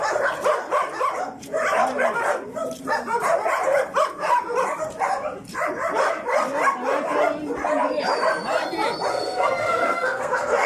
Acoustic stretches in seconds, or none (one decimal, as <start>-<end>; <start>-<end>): 0.0-9.1